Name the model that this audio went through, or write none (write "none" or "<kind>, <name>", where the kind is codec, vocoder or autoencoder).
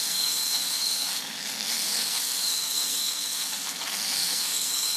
codec, SNAC